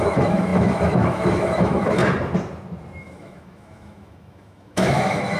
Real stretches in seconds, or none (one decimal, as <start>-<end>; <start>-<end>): 2.0-3.0